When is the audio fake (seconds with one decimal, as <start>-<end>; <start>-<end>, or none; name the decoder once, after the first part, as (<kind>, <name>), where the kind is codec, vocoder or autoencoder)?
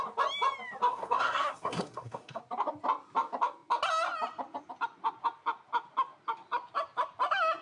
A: 0.9-2.4 (codec, SNAC)